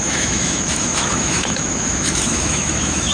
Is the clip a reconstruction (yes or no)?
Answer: yes